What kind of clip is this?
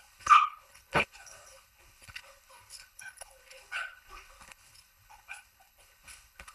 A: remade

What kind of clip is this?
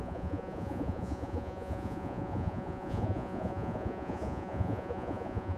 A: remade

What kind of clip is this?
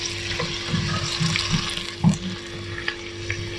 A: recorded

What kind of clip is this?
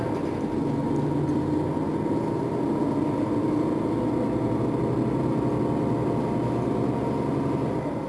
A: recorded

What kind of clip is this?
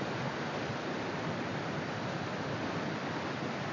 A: recorded